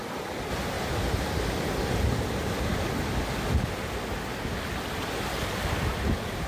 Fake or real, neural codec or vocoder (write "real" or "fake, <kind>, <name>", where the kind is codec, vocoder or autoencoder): real